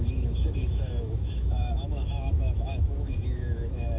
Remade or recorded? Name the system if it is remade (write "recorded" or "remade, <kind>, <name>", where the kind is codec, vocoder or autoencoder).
remade, autoencoder, DAC-VAE